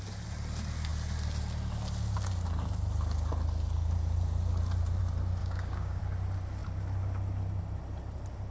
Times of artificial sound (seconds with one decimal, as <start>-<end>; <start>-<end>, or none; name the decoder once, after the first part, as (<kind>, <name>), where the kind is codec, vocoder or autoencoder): 5.4-6.0 (codec, DAC)